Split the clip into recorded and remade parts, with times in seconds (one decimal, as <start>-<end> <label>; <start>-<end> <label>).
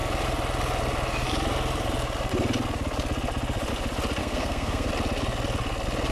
0.0-4.2 recorded; 4.2-4.9 remade; 4.9-6.1 recorded